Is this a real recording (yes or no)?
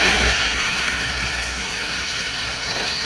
no